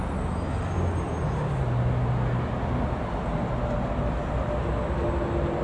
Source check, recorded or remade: recorded